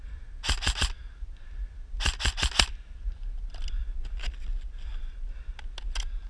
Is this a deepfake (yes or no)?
no